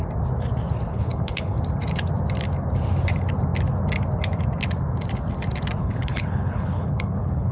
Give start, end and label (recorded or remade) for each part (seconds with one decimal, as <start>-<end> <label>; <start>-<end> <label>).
0.0-0.9 recorded; 0.9-1.6 remade; 1.6-5.8 recorded; 5.8-7.5 remade